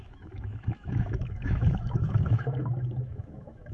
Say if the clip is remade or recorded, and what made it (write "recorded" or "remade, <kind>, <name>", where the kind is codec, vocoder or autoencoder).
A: remade, autoencoder, DAC-VAE